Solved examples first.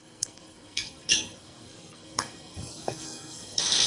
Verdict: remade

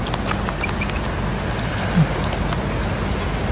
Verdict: recorded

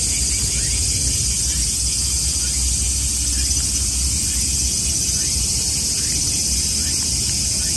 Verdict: recorded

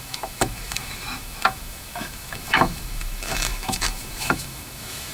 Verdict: remade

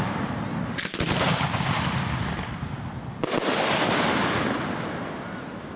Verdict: recorded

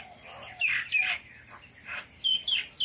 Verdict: remade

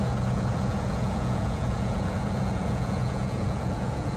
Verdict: remade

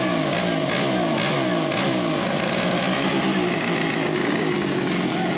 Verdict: recorded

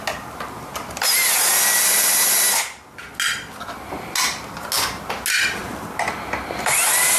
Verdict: recorded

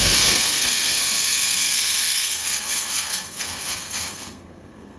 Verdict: remade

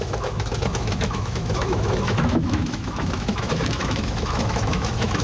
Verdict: remade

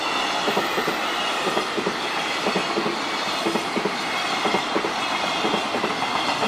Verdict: recorded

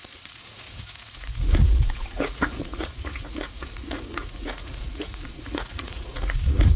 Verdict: remade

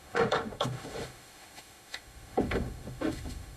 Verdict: remade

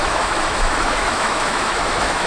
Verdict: remade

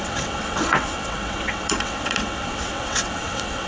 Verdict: remade